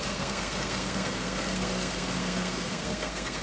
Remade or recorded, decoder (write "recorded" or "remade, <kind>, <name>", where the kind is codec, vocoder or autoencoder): remade, codec, SNAC